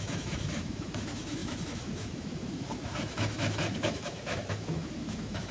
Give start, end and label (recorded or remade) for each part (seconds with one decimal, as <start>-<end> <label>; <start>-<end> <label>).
0.0-5.5 remade